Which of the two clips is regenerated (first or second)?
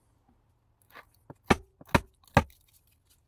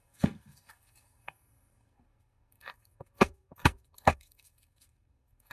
second